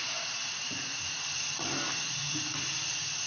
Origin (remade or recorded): recorded